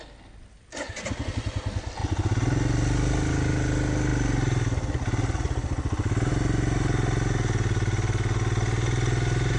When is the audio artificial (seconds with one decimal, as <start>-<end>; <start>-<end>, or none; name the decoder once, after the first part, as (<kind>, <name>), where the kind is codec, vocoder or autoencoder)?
none